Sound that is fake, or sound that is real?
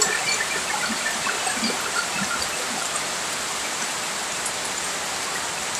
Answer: real